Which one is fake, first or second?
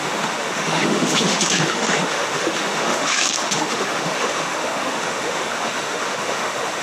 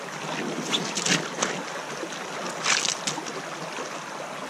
first